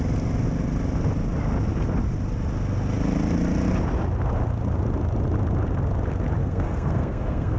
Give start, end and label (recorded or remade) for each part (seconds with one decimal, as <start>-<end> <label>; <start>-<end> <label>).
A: 0.0-6.4 recorded; 6.4-7.6 remade